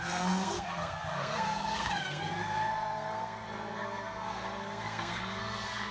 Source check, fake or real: fake